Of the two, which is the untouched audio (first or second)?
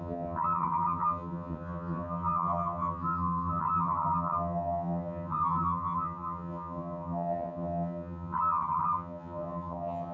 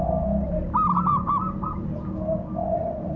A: second